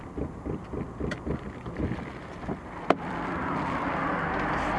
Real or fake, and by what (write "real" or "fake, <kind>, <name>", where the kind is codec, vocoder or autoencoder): real